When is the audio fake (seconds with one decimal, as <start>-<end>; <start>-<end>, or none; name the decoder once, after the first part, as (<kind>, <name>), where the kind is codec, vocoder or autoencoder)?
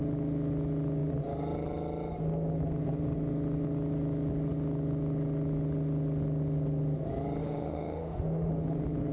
7.4-8.5 (autoencoder, DAC-VAE)